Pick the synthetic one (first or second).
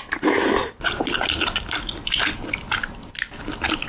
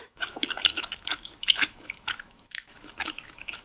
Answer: second